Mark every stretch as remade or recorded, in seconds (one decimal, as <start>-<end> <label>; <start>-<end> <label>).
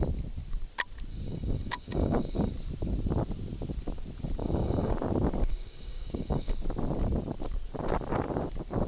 0.0-1.1 recorded; 1.1-2.5 remade; 2.5-4.4 recorded; 4.4-4.9 remade; 4.9-5.5 recorded; 5.5-6.6 remade; 6.6-8.9 recorded